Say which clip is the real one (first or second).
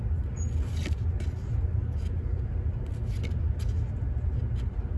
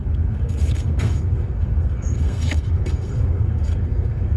first